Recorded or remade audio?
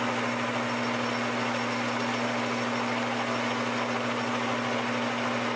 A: recorded